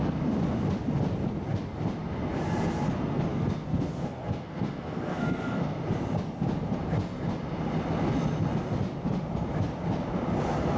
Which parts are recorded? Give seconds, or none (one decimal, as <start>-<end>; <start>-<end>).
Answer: 0.0-3.3; 5.8-10.8